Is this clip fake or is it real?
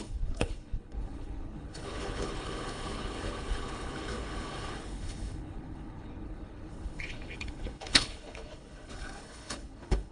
fake